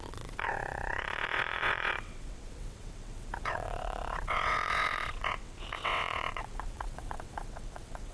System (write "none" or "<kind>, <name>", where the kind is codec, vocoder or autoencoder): vocoder, WaveNeXt